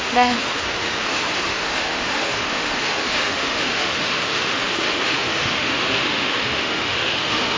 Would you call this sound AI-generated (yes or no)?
yes